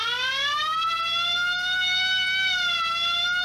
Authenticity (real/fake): real